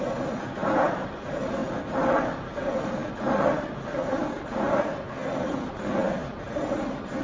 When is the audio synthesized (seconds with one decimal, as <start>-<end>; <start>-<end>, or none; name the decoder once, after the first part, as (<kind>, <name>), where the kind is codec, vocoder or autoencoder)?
none